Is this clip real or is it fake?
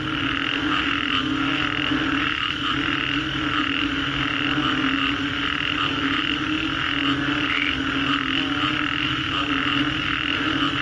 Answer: real